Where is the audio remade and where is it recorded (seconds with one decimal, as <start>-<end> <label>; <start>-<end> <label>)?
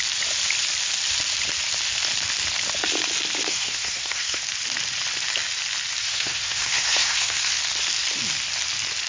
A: 0.0-3.5 recorded; 3.5-4.4 remade; 4.4-6.0 recorded; 6.0-7.5 remade; 7.5-9.1 recorded